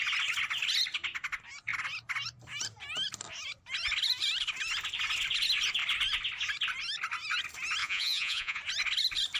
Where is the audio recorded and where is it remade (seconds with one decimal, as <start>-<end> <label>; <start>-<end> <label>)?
0.0-7.8 recorded; 7.8-8.6 remade; 8.6-9.4 recorded